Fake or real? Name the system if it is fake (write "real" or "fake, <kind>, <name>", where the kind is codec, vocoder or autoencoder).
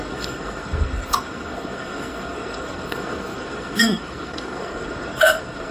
fake, codec, SNAC